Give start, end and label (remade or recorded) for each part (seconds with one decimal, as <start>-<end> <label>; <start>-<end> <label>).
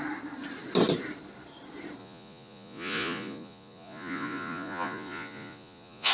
0.0-2.0 recorded; 2.0-6.1 remade